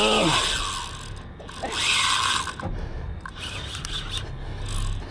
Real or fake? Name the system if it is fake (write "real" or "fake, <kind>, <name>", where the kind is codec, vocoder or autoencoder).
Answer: real